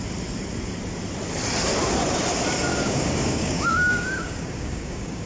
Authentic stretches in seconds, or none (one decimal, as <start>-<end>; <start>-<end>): 0.0-2.7